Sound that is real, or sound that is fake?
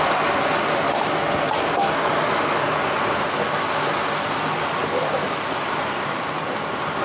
real